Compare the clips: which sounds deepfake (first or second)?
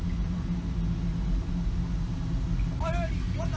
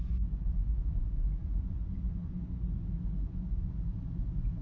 second